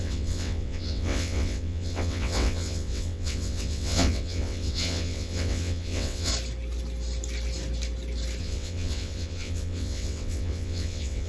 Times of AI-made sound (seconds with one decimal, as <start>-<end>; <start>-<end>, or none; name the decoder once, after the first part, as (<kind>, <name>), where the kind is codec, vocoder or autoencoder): 0.0-6.3 (vocoder, WaveNeXt); 8.4-11.3

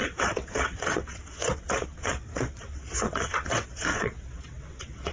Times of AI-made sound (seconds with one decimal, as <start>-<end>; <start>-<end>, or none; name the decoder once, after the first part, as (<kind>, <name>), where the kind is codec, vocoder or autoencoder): 0.0-5.1 (vocoder, WaveNeXt)

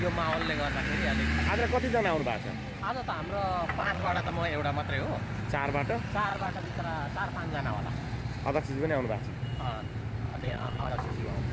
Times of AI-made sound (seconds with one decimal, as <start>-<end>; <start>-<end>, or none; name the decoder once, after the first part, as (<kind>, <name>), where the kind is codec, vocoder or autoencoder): 3.8-4.3 (vocoder, WaveNeXt); 6.3-6.8; 10.3-10.9